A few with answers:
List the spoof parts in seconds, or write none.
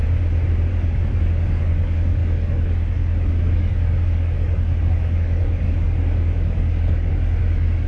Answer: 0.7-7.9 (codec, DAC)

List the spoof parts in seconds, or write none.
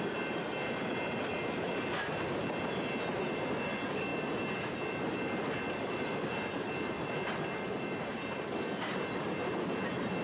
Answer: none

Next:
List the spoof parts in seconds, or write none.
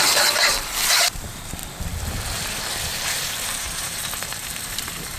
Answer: 0.0-1.6 (vocoder, BigVGAN v2); 2.9-5.2